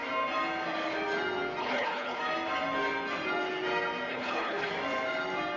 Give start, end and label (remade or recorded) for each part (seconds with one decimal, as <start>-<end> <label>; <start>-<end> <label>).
0.0-1.6 recorded; 1.6-2.2 remade; 2.2-4.1 recorded; 4.1-4.7 remade; 4.7-5.6 recorded